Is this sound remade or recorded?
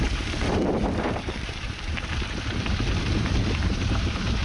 remade